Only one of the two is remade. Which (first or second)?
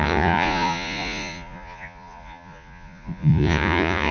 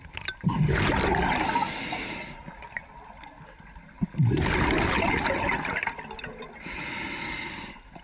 first